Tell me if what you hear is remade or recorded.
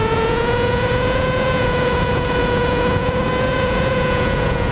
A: remade